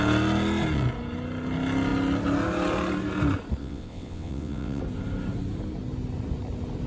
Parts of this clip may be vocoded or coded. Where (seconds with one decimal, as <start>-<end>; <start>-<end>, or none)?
3.6-4.8